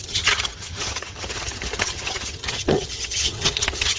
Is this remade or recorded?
remade